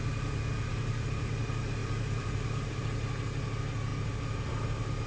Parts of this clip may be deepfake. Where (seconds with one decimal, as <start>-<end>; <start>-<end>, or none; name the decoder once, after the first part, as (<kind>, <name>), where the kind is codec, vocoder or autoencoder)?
0.7-1.3 (vocoder, BigVGAN v2); 1.8-2.8